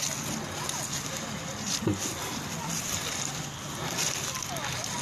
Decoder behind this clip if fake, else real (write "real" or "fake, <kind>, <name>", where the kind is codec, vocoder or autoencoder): real